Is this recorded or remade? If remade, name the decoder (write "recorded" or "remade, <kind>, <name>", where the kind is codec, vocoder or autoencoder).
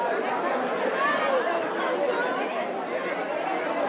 recorded